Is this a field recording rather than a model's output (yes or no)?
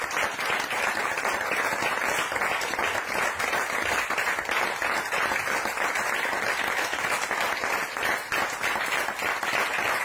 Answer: yes